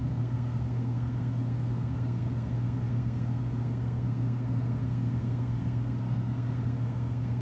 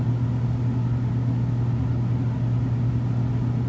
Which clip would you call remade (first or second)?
first